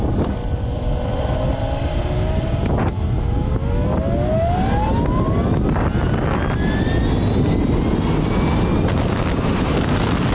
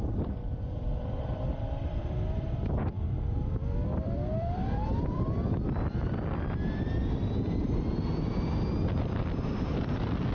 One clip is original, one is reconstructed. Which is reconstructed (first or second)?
second